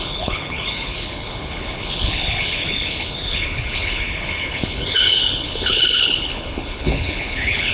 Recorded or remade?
remade